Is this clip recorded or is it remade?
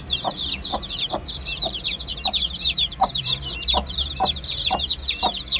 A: remade